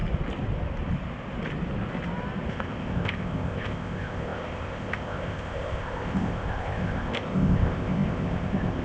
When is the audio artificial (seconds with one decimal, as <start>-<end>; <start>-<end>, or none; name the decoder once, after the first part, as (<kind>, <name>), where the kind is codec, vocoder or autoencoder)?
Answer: 2.5-8.8 (codec, ZipCodec)